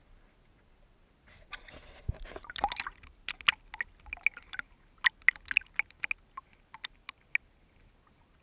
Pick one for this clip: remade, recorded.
recorded